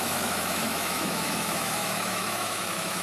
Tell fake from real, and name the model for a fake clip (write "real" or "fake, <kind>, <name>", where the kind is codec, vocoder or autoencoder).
fake, autoencoder, DAC-VAE